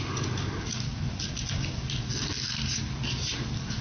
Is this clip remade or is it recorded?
recorded